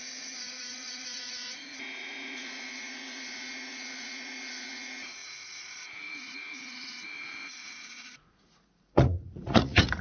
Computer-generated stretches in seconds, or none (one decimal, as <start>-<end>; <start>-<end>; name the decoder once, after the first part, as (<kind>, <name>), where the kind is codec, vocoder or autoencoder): 0.0-10.0 (vocoder, Vocos)